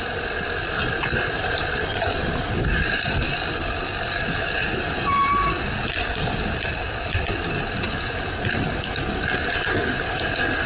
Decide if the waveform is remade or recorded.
recorded